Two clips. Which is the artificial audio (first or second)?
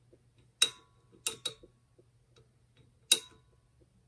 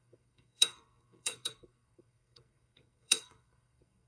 second